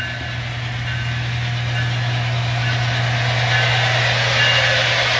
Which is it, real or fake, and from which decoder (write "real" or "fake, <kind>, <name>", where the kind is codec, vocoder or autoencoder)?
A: real